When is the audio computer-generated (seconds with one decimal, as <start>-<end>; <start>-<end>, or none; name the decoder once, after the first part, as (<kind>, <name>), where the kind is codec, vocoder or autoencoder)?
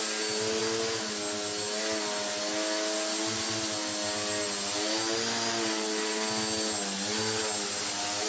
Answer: none